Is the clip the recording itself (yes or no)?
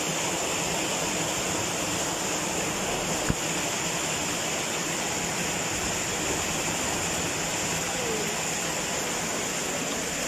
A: yes